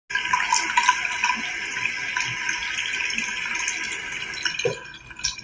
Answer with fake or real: real